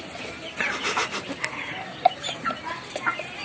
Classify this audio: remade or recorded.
recorded